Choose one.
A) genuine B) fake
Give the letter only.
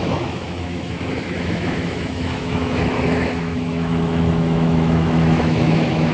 B